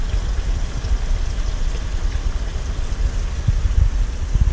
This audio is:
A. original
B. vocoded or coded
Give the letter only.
A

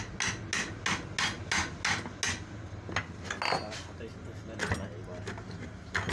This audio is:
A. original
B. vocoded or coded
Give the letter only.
A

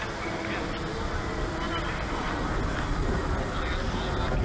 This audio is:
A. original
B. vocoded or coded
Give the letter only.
A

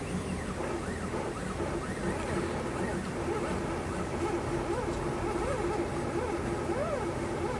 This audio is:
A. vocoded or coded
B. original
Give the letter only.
B